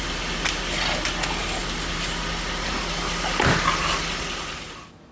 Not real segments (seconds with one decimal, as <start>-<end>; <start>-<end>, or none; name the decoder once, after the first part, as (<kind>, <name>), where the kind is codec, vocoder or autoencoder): none